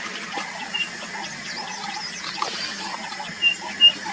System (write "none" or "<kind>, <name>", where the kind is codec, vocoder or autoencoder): none